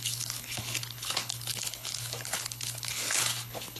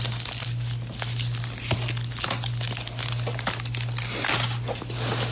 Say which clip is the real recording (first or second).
second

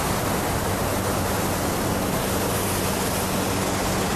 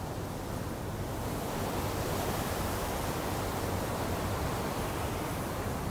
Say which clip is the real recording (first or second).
first